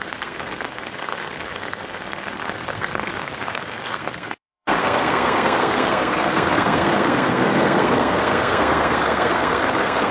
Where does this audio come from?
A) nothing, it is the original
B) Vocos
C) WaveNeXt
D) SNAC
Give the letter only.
D